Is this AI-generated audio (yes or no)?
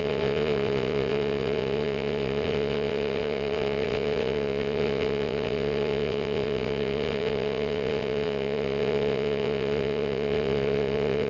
yes